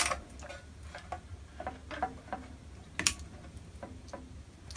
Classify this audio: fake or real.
real